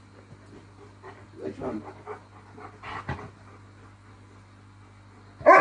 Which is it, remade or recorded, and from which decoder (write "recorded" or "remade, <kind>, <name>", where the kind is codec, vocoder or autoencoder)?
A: recorded